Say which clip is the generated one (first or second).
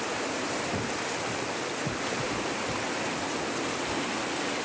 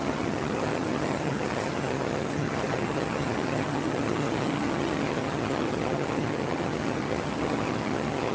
second